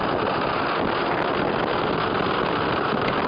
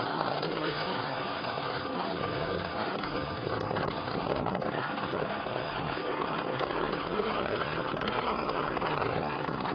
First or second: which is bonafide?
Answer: first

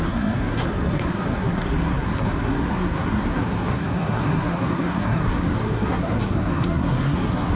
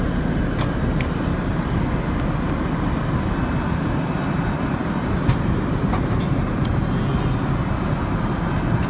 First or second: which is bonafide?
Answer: second